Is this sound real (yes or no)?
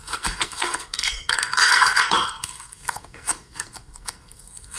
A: no